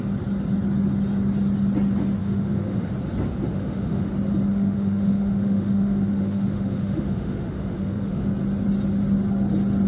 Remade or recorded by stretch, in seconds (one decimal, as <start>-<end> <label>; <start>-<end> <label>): 0.0-2.2 recorded; 2.2-2.9 remade; 2.9-3.5 recorded; 3.5-4.1 remade; 4.1-4.5 recorded; 4.5-8.3 remade; 8.3-9.9 recorded